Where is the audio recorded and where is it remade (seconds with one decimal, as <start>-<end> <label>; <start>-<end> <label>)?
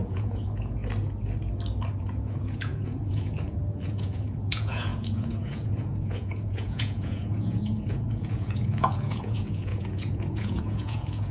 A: 0.0-0.8 remade; 0.8-2.0 recorded; 2.0-11.3 remade